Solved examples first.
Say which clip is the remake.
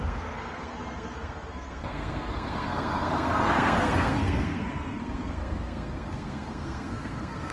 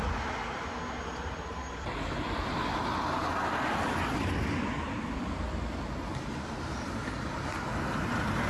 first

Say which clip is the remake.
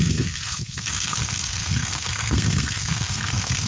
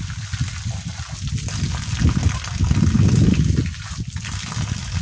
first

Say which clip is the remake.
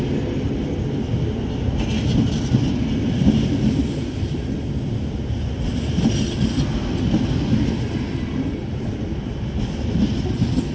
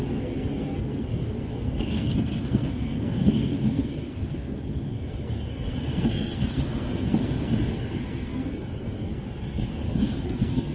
second